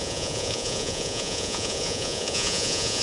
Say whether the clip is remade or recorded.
remade